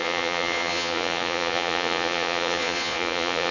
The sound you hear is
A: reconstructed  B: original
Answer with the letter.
A